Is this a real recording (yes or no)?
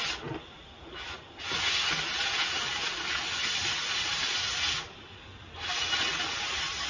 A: yes